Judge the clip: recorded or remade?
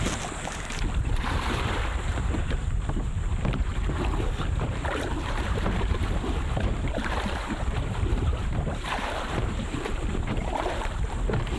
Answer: remade